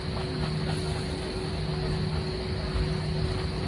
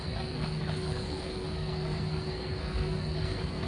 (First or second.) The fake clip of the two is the second